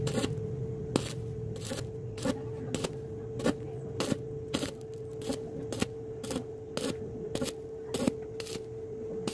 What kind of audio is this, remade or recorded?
recorded